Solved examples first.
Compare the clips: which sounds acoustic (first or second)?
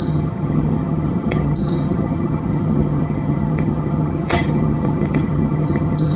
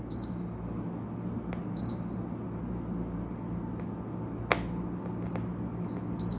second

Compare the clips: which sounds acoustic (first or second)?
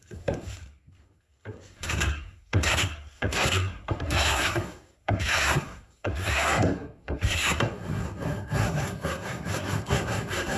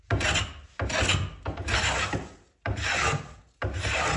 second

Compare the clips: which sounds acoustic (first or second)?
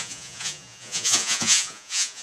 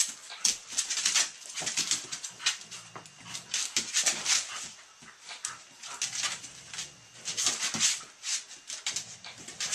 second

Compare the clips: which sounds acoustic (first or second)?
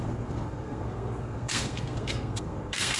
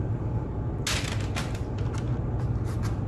second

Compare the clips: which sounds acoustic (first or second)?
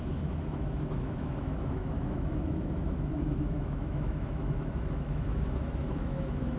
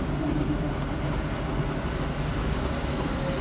second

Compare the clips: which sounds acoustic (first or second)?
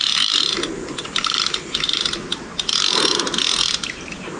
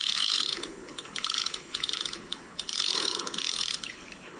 first